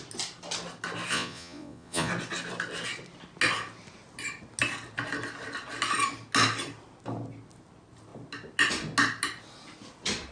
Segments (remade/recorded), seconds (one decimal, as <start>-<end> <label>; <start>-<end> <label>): 0.0-1.1 recorded; 1.1-2.1 remade; 2.1-10.3 recorded